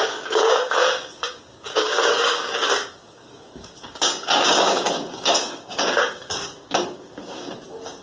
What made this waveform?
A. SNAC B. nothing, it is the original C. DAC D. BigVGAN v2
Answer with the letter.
C